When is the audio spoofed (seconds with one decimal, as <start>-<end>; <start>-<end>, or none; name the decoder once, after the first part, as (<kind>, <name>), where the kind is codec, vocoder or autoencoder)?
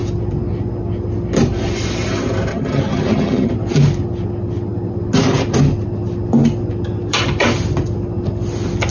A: 2.5-3.5 (vocoder, HiFi-GAN)